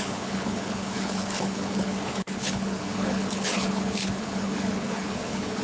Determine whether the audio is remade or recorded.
remade